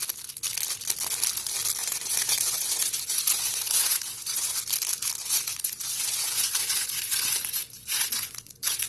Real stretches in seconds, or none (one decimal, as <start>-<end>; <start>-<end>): 0.0-1.8; 4.6-5.2